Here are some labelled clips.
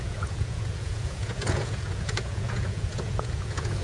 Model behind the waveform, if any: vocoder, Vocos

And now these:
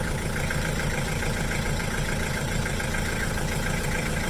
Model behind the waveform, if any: vocoder, BigVGAN v2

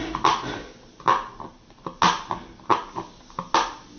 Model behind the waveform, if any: none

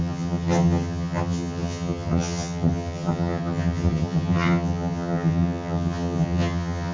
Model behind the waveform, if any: vocoder, HiFi-GAN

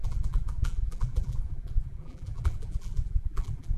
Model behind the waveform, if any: vocoder, BigVGAN v2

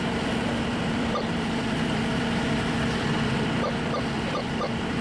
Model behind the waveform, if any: vocoder, BigVGAN v2